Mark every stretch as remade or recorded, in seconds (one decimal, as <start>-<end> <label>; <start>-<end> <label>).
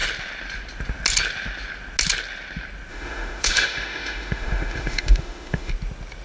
0.0-2.9 recorded; 2.9-5.7 remade; 5.7-6.2 recorded